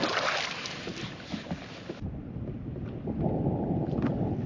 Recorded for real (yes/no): yes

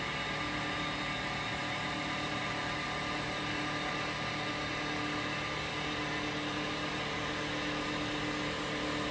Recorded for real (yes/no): yes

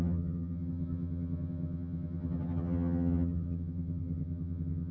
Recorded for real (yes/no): no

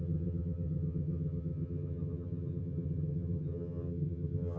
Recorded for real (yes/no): no